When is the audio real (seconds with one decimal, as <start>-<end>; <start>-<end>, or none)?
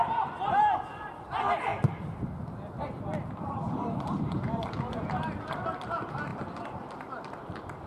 1.7-3.4